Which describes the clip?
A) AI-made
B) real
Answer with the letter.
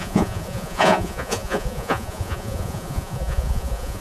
A